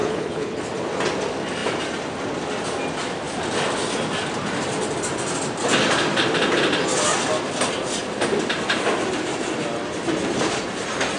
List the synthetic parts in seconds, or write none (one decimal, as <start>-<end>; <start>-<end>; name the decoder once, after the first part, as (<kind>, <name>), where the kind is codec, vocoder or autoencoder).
0.0-0.6 (codec, HILCodec)